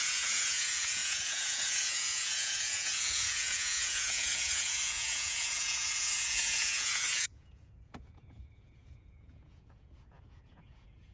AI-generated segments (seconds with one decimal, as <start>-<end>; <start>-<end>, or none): 0.0-11.1